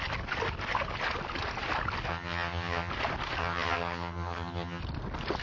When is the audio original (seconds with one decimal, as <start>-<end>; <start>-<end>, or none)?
0.0-2.1; 2.9-3.4; 4.8-5.4

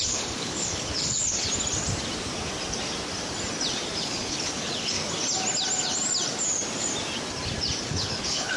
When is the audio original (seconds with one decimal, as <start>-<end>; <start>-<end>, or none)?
1.5-4.0; 5.0-7.8